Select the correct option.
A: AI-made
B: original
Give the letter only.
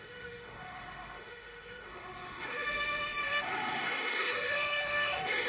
A